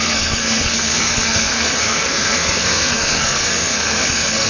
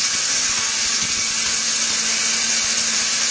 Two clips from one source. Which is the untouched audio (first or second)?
second